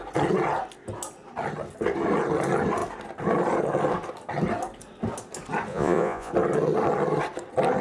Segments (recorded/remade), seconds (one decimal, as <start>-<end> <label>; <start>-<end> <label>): 0.0-5.7 recorded; 5.7-6.3 remade; 6.3-7.8 recorded